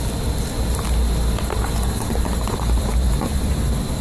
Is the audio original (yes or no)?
yes